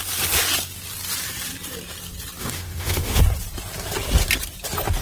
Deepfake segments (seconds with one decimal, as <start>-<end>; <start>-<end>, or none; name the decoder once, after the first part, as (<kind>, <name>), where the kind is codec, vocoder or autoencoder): 2.4-3.2 (autoencoder, DAC-VAE)